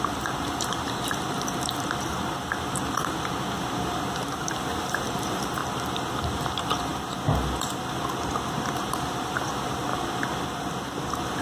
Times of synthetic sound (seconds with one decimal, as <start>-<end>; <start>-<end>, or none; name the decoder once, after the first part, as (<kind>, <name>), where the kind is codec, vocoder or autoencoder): 0.0-5.6 (vocoder, BigVGAN v2); 6.2-6.9; 8.7-9.9